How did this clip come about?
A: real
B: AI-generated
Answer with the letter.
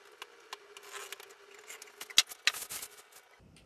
A